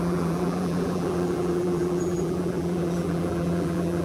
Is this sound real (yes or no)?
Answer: no